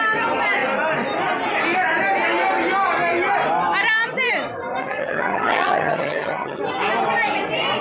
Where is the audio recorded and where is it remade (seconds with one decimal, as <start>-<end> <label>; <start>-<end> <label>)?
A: 0.0-4.8 recorded; 4.8-6.6 remade; 6.6-7.8 recorded